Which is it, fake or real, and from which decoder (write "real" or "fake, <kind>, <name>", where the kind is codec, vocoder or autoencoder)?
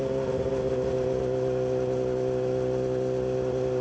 real